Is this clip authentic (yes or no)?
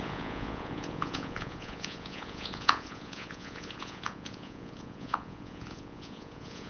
no